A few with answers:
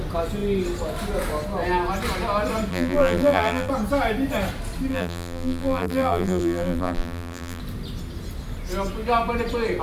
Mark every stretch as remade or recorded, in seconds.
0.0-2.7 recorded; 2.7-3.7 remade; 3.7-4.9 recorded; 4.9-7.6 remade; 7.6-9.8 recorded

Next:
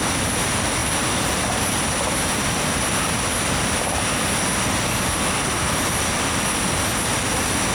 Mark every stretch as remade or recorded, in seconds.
0.0-0.8 recorded; 0.8-2.9 remade; 2.9-7.7 recorded

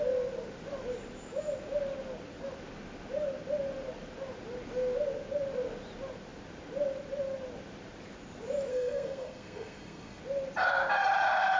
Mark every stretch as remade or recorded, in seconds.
0.0-8.7 recorded; 8.7-10.2 remade; 10.2-11.6 recorded